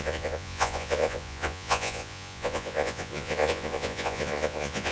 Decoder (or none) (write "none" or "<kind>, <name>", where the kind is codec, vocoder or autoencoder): vocoder, Vocos